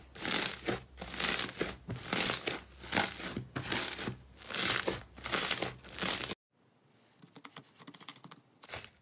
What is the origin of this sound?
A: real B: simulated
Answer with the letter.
A